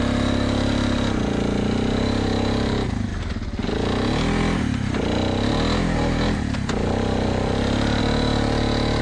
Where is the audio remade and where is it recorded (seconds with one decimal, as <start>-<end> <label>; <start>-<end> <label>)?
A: 0.0-9.0 recorded